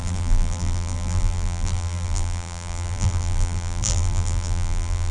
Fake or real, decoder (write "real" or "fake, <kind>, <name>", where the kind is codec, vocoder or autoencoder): fake, vocoder, BigVGAN v2